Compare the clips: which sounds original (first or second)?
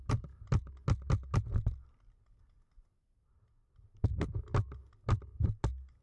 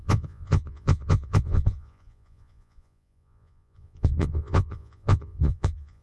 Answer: first